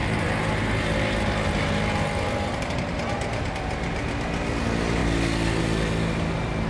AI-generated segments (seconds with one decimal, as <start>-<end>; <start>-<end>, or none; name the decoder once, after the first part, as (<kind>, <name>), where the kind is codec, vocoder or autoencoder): none